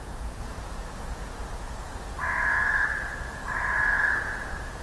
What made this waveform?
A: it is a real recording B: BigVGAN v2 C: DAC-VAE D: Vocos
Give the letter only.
D